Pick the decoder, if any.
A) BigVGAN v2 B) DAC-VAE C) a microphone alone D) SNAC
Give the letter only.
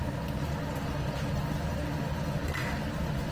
C